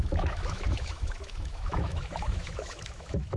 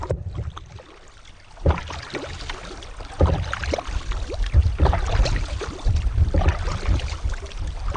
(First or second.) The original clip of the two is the second